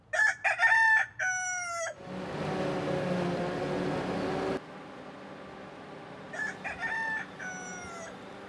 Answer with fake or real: real